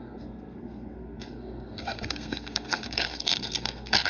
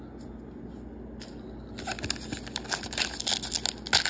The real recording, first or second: second